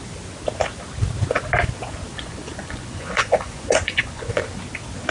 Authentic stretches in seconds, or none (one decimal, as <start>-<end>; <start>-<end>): 0.0-2.1; 4.4-5.1

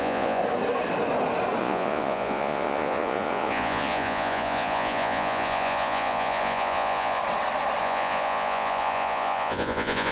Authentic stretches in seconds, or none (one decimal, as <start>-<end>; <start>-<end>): 0.4-1.6; 7.2-7.8

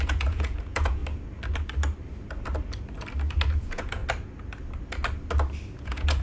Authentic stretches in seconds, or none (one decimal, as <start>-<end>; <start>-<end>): 1.0-3.6; 4.0-5.8

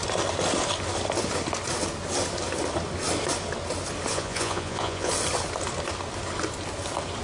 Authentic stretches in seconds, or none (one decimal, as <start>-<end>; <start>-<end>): 0.0-4.1; 5.1-7.2

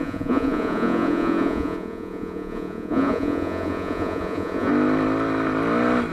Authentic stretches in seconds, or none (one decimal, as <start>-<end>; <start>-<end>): 4.7-6.1

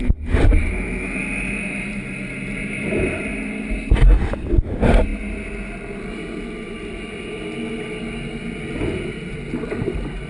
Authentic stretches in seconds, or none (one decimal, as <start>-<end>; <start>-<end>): 0.0-10.3

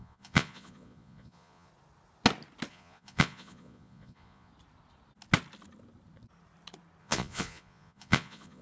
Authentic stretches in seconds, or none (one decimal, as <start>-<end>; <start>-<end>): 1.7-2.7; 4.5-7.0

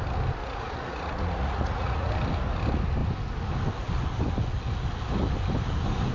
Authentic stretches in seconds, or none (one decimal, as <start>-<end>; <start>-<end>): 0.0-0.4; 2.1-6.1